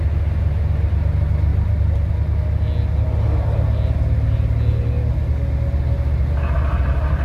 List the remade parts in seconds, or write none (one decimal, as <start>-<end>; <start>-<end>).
none